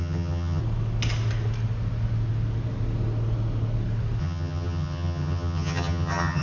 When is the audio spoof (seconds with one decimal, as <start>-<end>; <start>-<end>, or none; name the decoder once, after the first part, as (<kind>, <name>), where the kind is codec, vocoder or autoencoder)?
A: 0.0-0.6 (vocoder, HiFi-GAN); 4.2-6.4